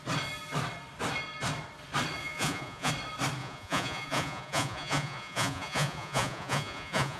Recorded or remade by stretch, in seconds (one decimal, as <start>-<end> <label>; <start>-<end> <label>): 0.0-2.2 recorded; 2.2-2.9 remade; 2.9-3.4 recorded; 3.4-7.2 remade